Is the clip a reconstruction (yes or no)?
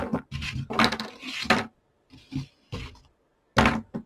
no